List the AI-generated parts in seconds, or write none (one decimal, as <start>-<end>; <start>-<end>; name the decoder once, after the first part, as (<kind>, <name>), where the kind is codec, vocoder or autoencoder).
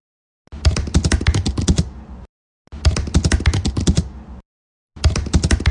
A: none